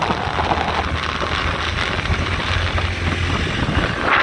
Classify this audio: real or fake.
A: real